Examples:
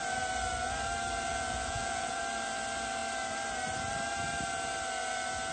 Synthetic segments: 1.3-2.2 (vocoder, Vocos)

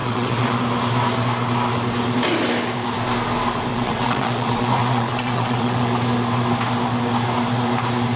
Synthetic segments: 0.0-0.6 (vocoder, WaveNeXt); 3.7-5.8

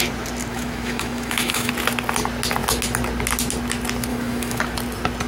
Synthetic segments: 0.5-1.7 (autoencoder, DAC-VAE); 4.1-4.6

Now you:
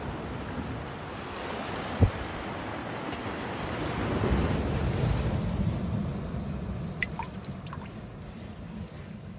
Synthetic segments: 6.1-8.0 (vocoder, BigVGAN v2)

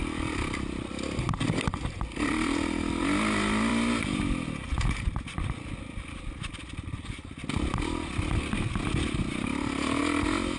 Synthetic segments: none

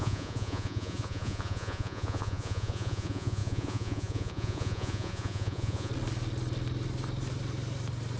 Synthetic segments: 0.0-5.9 (vocoder, Vocos)

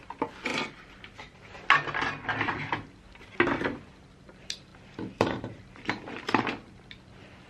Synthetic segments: 0.5-1.4 (vocoder, BigVGAN v2); 4.7-6.4